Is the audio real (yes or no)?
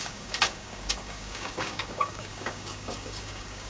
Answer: no